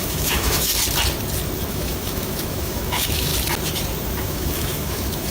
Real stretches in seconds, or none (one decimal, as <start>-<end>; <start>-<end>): 0.7-1.7; 3.3-4.2